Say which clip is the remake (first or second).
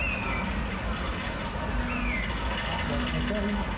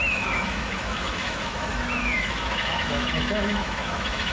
second